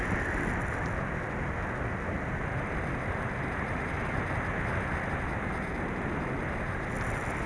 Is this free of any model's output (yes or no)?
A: yes